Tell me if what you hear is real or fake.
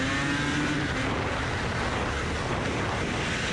real